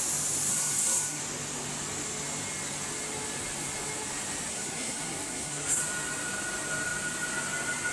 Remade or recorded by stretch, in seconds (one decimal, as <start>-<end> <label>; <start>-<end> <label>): 0.0-0.5 recorded; 0.5-1.2 remade; 1.2-4.5 recorded; 4.5-5.8 remade; 5.8-7.9 recorded